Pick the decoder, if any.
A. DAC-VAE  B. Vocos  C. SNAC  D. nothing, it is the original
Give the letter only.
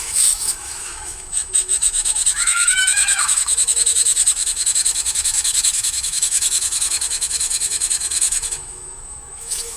A